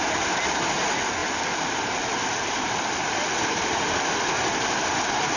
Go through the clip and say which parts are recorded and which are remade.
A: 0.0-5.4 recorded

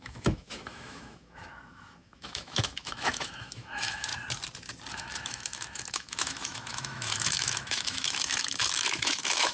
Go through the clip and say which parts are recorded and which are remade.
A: 0.0-4.1 remade; 4.1-4.9 recorded; 4.9-9.5 remade

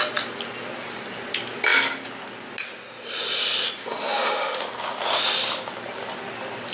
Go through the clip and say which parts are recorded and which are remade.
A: 0.0-3.8 recorded; 3.8-4.6 remade; 4.6-6.7 recorded

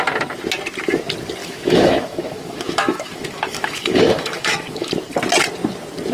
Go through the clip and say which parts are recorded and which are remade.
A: 0.0-1.4 recorded; 1.4-4.9 remade; 4.9-6.1 recorded

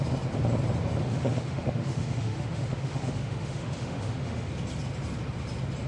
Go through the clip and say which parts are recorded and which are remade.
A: 0.0-1.0 recorded; 1.0-4.5 remade; 4.5-5.9 recorded

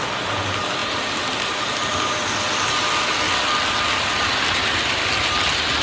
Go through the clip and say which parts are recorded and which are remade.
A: 0.0-5.8 recorded

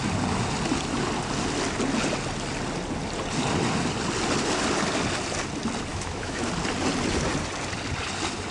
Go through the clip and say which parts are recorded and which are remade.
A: 0.0-5.9 recorded; 5.9-6.5 remade; 6.5-8.5 recorded

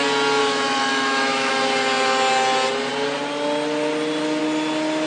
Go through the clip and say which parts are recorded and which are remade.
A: 0.0-0.4 recorded; 0.4-1.5 remade; 1.5-5.1 recorded